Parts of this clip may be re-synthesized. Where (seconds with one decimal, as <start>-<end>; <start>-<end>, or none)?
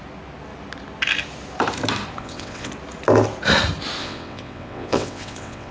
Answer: 2.2-2.7; 4.0-5.7